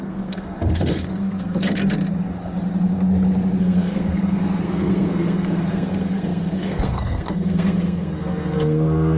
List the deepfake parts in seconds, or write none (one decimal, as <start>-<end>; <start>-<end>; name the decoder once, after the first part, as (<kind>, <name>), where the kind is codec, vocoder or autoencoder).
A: 0.0-1.8 (codec, SNAC); 3.6-9.2